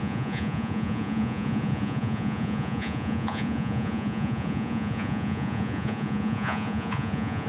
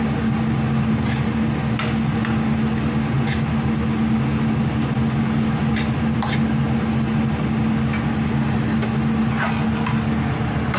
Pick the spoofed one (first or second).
first